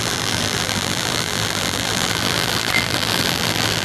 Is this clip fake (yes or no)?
yes